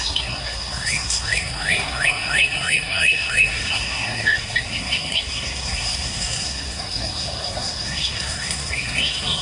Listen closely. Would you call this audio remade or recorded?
remade